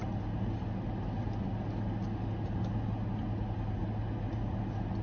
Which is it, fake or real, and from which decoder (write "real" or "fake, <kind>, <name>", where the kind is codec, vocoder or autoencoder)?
real